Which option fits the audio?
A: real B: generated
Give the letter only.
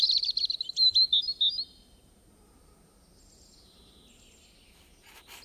A